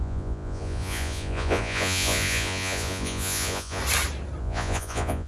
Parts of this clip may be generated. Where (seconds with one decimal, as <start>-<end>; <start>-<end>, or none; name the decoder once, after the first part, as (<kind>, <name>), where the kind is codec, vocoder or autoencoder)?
0.0-3.8 (vocoder, Vocos); 4.4-5.3